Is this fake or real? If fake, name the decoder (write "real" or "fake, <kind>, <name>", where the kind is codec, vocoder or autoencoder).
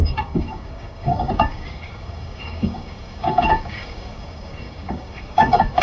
fake, codec, DAC